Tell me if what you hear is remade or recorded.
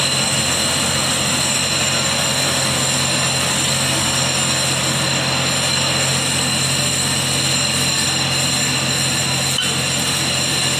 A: recorded